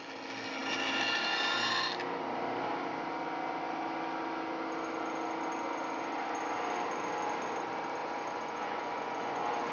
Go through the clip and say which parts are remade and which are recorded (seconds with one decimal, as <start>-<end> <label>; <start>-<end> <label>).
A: 0.0-8.0 recorded; 8.0-9.7 remade